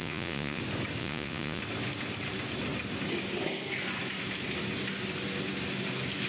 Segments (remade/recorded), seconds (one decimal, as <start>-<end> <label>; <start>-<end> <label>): 0.0-0.6 remade; 0.6-1.0 recorded; 1.0-1.6 remade; 1.6-6.3 recorded